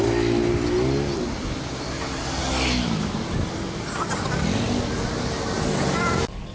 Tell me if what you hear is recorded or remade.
recorded